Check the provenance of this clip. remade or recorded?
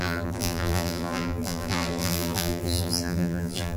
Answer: remade